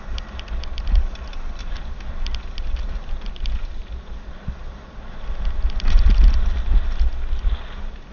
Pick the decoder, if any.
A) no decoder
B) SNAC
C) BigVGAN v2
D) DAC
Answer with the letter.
A